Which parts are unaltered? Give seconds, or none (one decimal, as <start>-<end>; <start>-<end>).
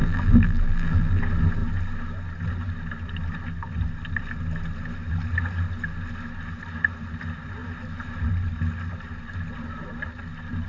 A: 1.2-10.7